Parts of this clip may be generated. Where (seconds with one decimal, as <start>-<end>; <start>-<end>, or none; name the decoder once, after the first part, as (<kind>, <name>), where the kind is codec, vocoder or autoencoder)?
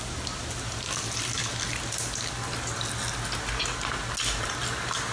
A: 0.0-1.4 (vocoder, BigVGAN v2); 4.4-5.1